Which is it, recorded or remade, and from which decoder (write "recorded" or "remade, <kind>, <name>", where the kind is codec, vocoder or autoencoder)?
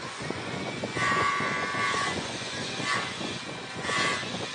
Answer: remade, vocoder, Vocos